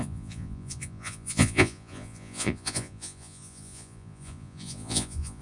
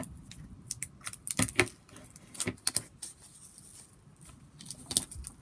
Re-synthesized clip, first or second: first